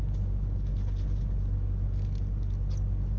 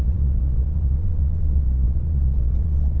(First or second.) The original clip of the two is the first